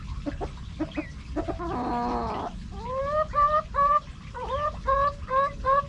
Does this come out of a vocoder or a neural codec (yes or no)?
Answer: no